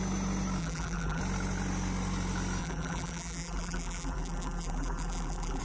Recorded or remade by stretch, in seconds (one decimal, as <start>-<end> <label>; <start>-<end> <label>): 0.0-0.6 recorded; 0.6-1.2 remade; 1.2-2.6 recorded; 2.6-5.6 remade